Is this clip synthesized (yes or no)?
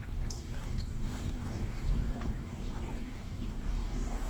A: yes